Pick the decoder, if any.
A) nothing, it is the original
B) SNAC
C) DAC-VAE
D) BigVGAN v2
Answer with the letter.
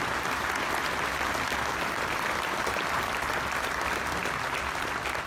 A